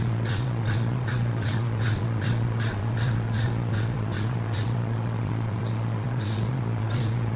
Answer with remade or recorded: remade